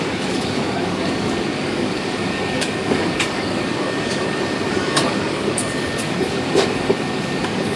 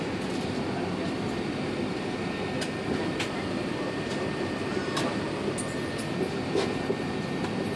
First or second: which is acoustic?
second